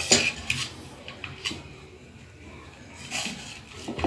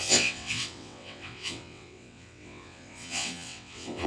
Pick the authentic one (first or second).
first